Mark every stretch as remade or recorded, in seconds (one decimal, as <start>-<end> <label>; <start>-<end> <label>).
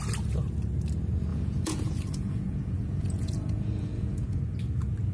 0.0-1.3 recorded; 1.3-4.4 remade; 4.4-5.1 recorded